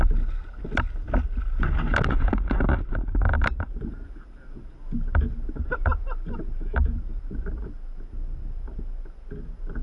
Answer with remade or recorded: recorded